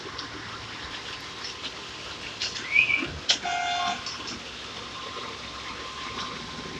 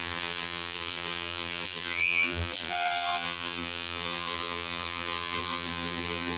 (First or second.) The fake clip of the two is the second